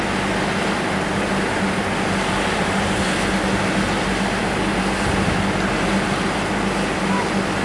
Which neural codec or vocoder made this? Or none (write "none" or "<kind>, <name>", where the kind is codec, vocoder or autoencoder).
none